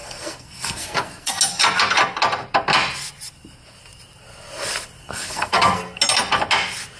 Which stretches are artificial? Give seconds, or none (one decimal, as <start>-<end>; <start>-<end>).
0.0-1.4; 5.0-6.0